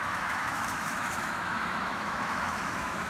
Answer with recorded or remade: remade